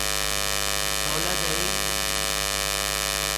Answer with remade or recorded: recorded